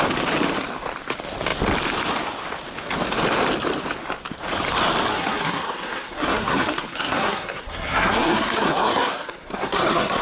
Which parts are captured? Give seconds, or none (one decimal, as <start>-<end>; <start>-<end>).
0.0-5.1